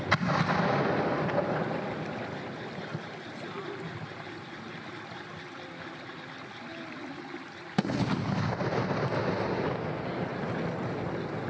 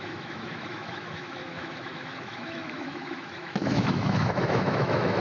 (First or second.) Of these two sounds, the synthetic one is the second